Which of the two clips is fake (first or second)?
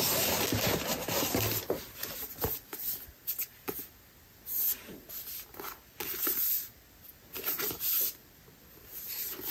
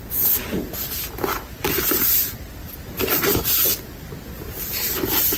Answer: second